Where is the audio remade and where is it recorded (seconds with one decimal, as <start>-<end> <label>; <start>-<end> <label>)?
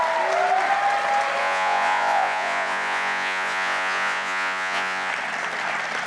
0.0-1.4 recorded; 1.4-5.1 remade; 5.1-6.1 recorded